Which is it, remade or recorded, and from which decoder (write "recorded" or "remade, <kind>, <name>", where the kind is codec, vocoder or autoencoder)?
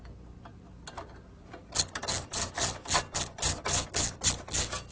recorded